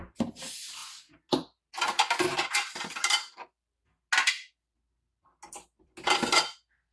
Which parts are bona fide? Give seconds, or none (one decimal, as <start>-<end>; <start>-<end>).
0.0-6.9